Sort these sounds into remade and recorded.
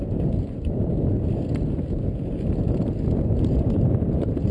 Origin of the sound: recorded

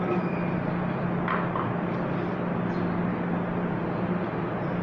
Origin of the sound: recorded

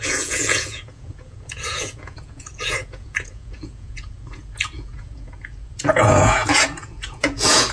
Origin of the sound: remade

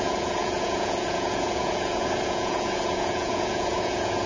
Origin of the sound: remade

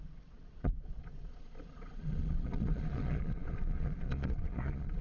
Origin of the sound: remade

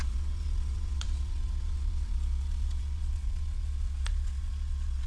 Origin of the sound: remade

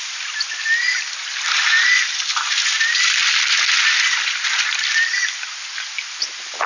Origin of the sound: recorded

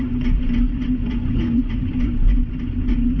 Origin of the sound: remade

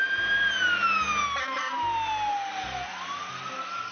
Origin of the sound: recorded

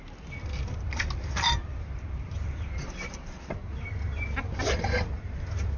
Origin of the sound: recorded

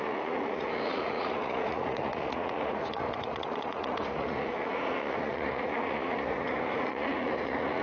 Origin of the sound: remade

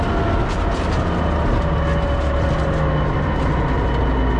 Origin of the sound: recorded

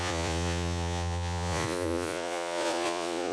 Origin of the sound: remade